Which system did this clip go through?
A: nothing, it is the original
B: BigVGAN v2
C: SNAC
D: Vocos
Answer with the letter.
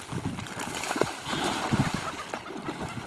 A